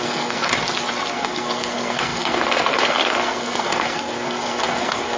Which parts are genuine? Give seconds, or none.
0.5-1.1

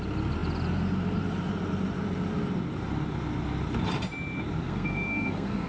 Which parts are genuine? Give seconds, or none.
0.0-4.6

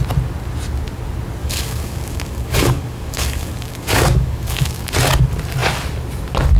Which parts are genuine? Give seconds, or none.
0.0-1.4; 4.9-6.6